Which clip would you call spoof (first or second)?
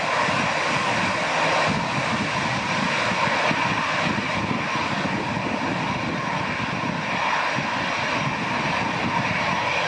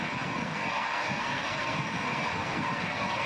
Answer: second